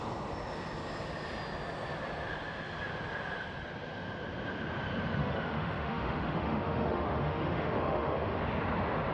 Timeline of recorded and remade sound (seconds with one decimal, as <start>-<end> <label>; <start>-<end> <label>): 0.0-5.2 recorded; 5.2-8.4 remade; 8.4-9.1 recorded